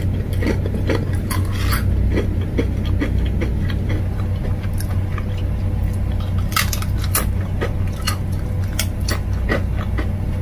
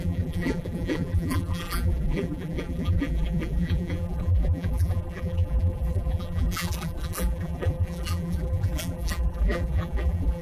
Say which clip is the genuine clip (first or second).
first